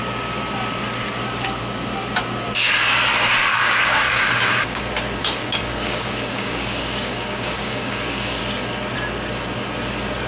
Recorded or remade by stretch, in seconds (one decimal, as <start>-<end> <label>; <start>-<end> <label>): 0.0-3.5 recorded; 3.5-4.8 remade; 4.8-5.2 recorded; 5.2-8.4 remade; 8.4-10.3 recorded